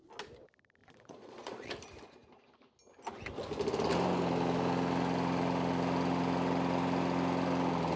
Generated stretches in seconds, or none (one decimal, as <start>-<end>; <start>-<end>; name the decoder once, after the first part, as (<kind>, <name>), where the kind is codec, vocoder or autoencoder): 0.8-1.7 (vocoder, Vocos)